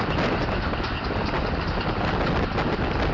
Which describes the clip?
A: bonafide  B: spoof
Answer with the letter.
A